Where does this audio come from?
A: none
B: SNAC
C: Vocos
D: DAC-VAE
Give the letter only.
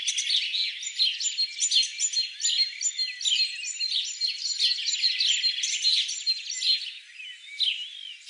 A